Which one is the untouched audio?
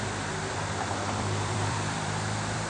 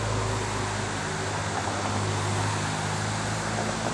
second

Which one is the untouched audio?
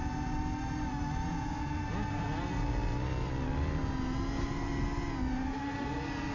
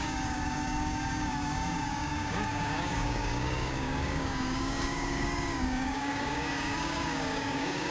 first